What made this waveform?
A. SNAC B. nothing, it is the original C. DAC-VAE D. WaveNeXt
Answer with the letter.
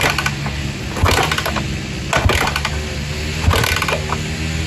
B